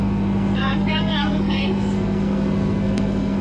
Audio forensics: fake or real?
fake